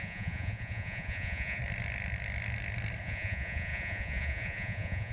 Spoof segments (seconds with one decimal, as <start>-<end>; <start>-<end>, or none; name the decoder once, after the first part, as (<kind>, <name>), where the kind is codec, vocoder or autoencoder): 0.0-1.6 (vocoder, Vocos); 3.0-5.1